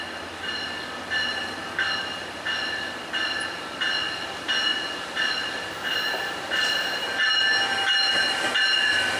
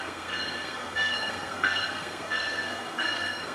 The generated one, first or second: second